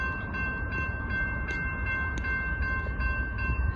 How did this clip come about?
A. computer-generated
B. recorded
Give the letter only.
B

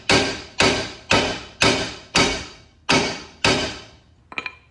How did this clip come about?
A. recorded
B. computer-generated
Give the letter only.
A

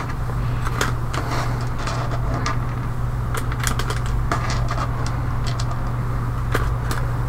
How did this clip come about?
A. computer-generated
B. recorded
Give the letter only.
B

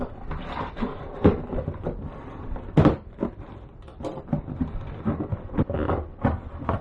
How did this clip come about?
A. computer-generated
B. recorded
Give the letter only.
B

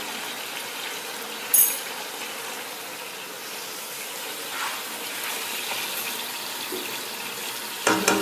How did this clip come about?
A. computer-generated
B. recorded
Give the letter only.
B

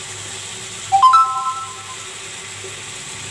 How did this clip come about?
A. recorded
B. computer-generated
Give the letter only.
A